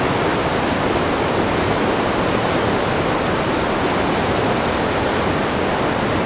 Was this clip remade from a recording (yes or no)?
no